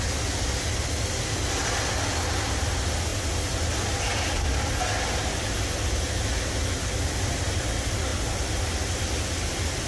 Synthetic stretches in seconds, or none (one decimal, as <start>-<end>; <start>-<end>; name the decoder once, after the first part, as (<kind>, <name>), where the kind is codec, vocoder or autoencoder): none